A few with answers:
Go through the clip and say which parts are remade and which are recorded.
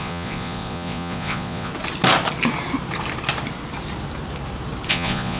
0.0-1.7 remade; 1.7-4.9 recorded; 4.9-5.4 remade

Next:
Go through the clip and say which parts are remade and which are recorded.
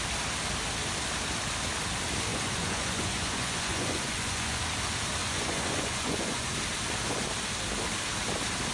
0.0-2.3 recorded; 2.3-4.6 remade; 4.6-5.2 recorded; 5.2-6.5 remade; 6.5-8.7 recorded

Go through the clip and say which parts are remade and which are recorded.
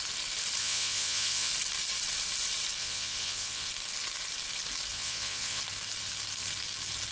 0.0-0.6 recorded; 0.6-1.5 remade; 1.5-2.8 recorded; 2.8-3.7 remade; 3.7-4.9 recorded; 4.9-5.6 remade; 5.6-7.1 recorded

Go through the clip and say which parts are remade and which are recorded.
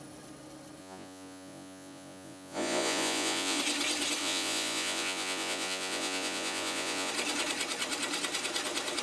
0.0-0.8 recorded; 0.8-3.6 remade; 3.6-4.2 recorded; 4.2-7.1 remade; 7.1-9.0 recorded